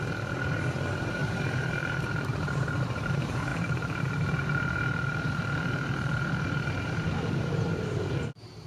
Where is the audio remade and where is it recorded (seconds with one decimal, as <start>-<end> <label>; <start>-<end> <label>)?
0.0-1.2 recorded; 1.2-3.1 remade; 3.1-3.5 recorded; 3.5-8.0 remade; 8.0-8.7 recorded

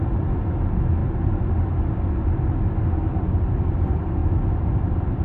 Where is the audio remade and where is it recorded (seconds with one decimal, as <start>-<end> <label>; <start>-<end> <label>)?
0.0-4.2 recorded; 4.2-5.2 remade

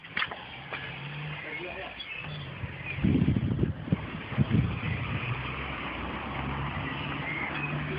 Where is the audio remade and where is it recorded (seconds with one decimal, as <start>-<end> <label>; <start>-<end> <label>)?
0.0-1.4 remade; 1.4-2.2 recorded; 2.2-6.4 remade; 6.4-8.0 recorded